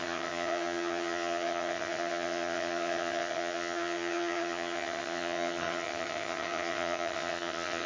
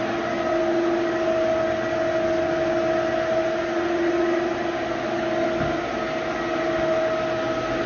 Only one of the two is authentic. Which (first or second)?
second